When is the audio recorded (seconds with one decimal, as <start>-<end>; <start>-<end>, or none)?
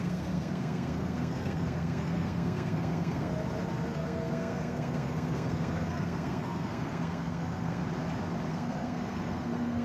3.3-3.9; 7.8-8.5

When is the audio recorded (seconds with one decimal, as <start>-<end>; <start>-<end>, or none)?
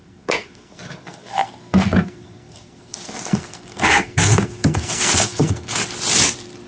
5.8-6.7